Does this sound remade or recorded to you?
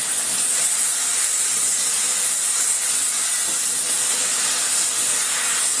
recorded